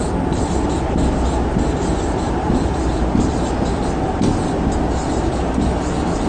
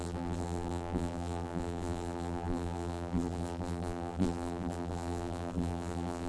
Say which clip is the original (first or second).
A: first